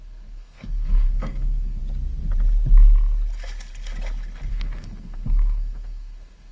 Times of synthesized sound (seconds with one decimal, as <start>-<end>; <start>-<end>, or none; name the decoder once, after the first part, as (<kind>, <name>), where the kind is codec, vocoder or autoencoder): 0.0-1.8 (codec, SNAC); 4.5-6.5